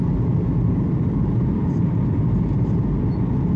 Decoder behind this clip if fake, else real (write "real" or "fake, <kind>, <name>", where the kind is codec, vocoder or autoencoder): real